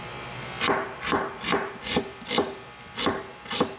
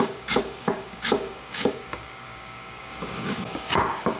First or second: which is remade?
second